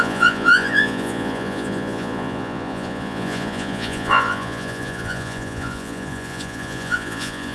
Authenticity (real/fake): fake